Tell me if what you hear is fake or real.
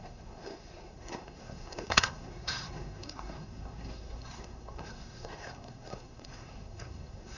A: fake